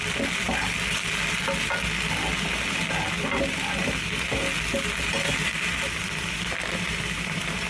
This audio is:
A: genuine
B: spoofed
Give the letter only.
A